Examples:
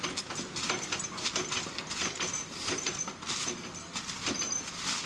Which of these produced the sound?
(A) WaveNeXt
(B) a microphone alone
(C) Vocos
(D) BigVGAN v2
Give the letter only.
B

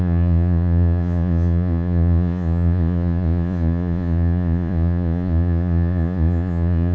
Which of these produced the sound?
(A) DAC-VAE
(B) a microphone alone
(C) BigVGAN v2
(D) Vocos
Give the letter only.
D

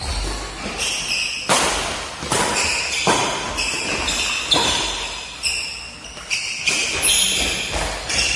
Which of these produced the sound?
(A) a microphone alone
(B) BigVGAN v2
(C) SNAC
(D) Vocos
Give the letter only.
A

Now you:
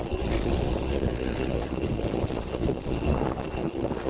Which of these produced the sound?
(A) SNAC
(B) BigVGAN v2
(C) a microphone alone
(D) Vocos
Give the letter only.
D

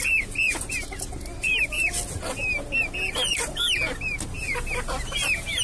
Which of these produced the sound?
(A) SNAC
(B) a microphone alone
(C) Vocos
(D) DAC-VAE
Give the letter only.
B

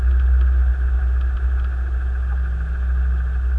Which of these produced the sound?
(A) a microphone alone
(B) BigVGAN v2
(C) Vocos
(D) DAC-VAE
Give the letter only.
A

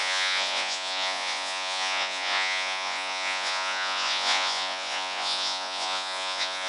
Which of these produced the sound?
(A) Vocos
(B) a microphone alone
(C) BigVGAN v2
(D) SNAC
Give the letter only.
A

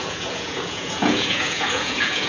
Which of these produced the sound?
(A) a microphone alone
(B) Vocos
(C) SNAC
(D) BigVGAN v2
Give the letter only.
B